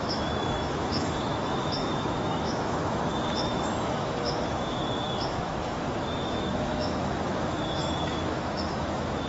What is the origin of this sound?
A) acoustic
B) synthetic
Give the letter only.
B